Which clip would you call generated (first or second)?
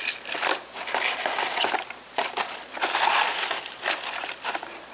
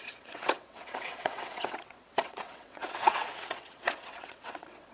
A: second